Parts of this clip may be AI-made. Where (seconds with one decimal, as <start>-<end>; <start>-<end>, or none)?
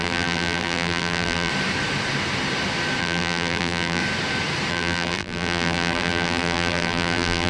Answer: 0.0-1.5; 3.0-4.0; 4.7-7.5